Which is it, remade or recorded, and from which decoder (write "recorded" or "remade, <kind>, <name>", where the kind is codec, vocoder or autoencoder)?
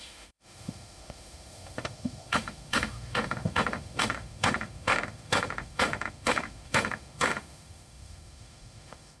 remade, autoencoder, DAC-VAE